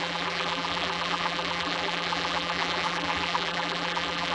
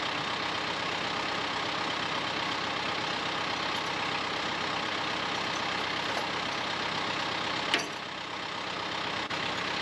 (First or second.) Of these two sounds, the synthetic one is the first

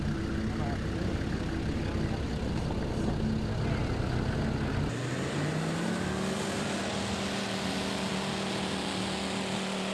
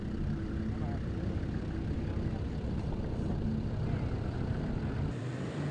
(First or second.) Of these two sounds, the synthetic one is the second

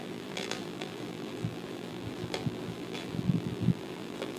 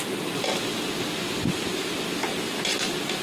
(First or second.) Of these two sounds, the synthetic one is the first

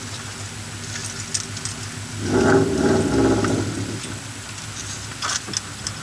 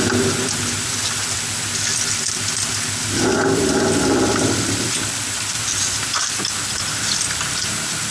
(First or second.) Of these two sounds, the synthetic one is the second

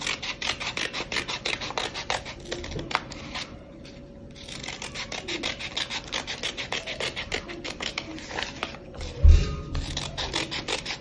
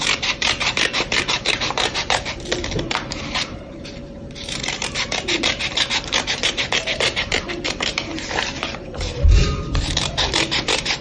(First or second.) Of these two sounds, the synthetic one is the second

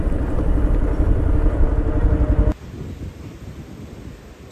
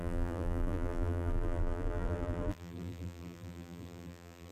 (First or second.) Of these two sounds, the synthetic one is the second